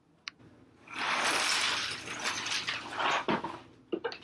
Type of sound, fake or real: real